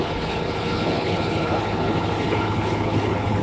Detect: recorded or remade remade